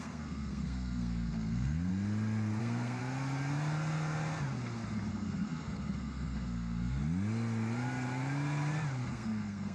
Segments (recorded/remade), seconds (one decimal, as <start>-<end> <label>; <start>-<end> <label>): 0.0-1.9 remade; 1.9-2.6 recorded; 2.6-3.0 remade; 3.0-5.1 recorded; 5.1-7.0 remade; 7.0-9.1 recorded; 9.1-9.7 remade